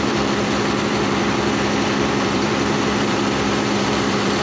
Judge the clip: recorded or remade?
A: remade